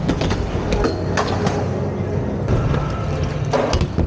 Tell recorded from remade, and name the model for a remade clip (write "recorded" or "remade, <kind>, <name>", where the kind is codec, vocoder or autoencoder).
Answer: recorded